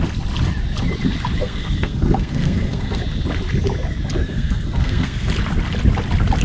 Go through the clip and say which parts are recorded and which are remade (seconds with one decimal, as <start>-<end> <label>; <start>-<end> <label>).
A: 0.0-1.4 recorded; 1.4-3.0 remade; 3.0-4.2 recorded; 4.2-5.3 remade; 5.3-6.4 recorded